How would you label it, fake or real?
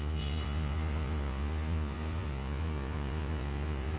fake